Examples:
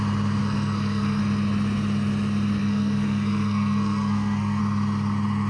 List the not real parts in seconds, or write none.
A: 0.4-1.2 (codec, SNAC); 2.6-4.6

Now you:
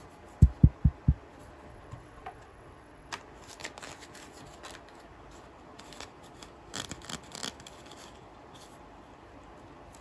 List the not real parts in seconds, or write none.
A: 1.7-3.1 (vocoder, WaveNeXt)

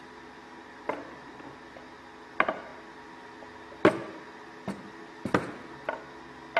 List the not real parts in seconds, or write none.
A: none

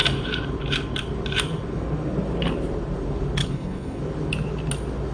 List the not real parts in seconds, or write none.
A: 3.4-4.0 (codec, HILCodec)